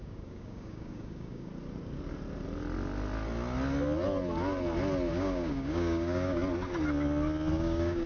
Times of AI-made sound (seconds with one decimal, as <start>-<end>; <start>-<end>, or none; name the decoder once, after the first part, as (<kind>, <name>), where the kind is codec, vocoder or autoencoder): 0.0-1.5 (codec, DAC); 5.1-6.4; 7.5-8.1